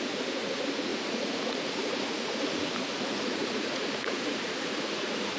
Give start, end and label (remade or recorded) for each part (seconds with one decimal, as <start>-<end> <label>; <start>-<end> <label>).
0.0-2.6 remade; 2.6-3.1 recorded; 3.1-5.4 remade